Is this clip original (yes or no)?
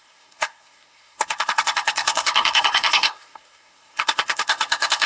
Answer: no